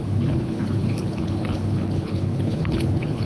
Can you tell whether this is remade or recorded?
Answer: remade